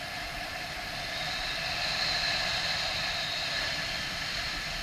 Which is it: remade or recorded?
recorded